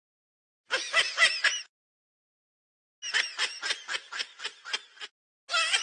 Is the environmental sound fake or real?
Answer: real